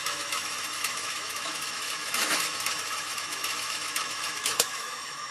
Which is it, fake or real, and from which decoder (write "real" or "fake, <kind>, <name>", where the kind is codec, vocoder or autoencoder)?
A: fake, autoencoder, DAC-VAE